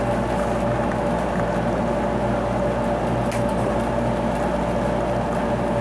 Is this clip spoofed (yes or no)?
no